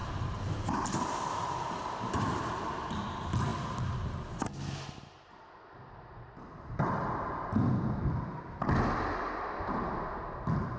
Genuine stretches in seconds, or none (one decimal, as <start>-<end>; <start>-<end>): 0.0-10.8